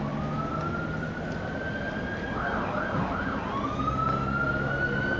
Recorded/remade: recorded